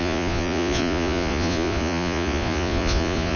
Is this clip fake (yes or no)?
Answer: yes